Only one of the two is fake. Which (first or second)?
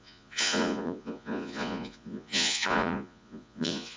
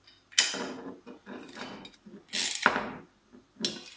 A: first